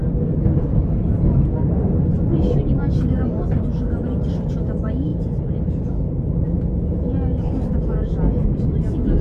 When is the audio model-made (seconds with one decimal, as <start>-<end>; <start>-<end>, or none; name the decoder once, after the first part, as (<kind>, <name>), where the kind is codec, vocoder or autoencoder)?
5.1-5.7 (vocoder, BigVGAN v2)